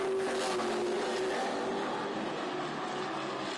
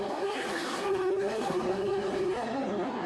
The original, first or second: first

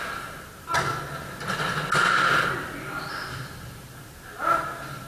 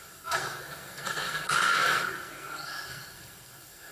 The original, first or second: first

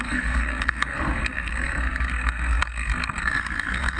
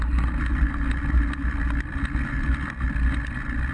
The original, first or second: second